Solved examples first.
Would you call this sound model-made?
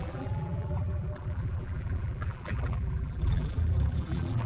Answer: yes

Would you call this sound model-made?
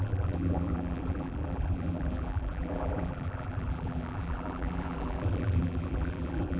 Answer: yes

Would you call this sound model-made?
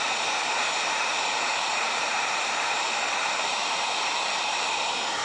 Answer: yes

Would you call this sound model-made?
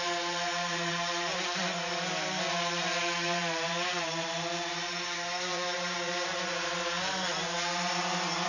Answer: yes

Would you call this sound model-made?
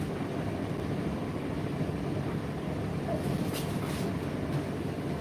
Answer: no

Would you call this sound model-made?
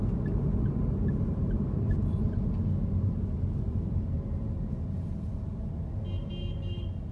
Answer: no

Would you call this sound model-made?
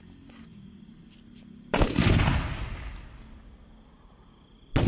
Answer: no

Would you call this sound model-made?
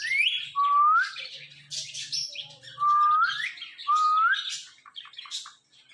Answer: no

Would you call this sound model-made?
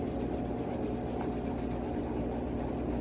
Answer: no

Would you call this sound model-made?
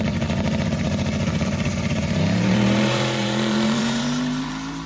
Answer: yes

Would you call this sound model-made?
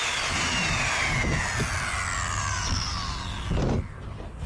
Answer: no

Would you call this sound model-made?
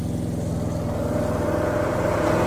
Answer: no